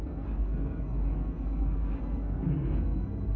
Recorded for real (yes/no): no